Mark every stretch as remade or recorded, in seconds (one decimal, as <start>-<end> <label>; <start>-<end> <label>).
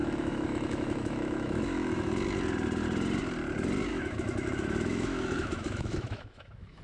0.0-2.1 remade; 2.1-3.9 recorded; 3.9-6.8 remade